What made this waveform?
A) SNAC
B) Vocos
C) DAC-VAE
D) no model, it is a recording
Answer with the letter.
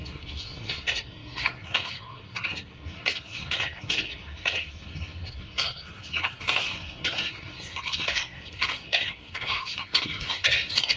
A